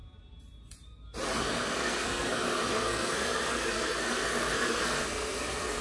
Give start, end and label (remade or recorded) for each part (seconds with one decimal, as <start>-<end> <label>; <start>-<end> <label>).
0.0-1.4 recorded; 1.4-5.8 remade